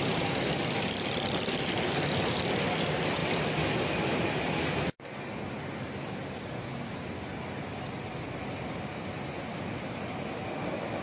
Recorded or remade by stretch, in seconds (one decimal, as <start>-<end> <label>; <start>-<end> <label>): 0.0-11.0 recorded